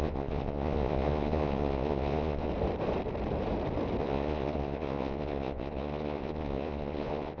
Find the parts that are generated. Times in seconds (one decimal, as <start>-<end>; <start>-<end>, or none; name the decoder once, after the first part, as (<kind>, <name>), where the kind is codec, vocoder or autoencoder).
0.0-2.5 (vocoder, Vocos); 4.0-7.4

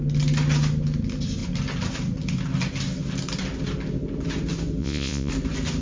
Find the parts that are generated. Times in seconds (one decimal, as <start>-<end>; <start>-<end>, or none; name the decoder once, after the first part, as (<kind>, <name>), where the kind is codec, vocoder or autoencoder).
4.8-5.3 (vocoder, Vocos)

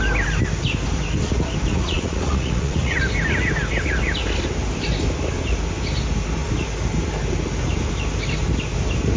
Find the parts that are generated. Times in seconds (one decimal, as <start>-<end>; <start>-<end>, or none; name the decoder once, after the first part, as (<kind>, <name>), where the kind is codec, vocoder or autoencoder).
1.7-3.0 (vocoder, Vocos)

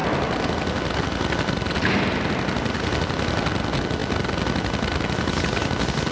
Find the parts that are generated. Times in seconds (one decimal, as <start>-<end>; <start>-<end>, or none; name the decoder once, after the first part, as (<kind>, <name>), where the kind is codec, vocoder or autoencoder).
none

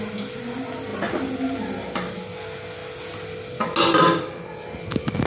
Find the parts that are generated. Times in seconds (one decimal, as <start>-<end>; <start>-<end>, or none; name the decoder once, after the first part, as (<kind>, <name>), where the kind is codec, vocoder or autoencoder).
none

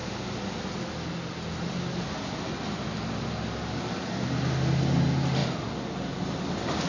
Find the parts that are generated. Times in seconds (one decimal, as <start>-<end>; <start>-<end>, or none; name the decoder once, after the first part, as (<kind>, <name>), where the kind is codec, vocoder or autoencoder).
none